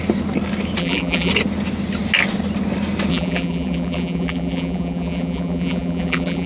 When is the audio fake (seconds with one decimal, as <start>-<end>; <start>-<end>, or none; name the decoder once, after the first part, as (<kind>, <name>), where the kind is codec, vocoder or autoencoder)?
0.8-1.3 (vocoder, BigVGAN v2); 3.1-6.5